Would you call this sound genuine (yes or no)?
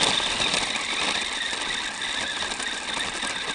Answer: yes